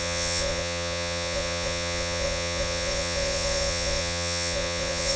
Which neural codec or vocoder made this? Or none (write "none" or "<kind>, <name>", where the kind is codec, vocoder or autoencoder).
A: vocoder, Vocos